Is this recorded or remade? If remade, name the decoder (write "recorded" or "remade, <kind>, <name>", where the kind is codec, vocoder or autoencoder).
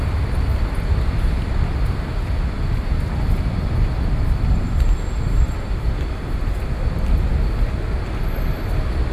recorded